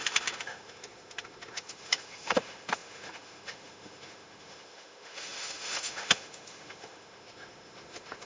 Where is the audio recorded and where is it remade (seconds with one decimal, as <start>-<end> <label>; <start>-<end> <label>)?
0.0-8.3 remade